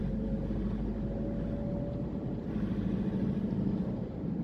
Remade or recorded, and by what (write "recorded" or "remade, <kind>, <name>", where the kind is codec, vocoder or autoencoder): recorded